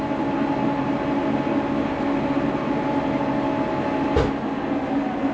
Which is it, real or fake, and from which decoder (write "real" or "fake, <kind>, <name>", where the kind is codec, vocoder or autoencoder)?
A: real